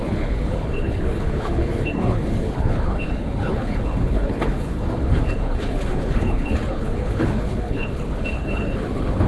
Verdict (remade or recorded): remade